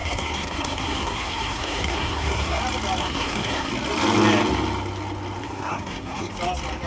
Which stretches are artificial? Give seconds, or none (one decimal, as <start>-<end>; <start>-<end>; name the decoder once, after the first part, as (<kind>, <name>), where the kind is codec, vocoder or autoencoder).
0.0-2.6 (codec, SNAC); 3.0-3.7; 5.4-6.3